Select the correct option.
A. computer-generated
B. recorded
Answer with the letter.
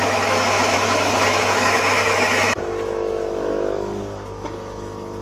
A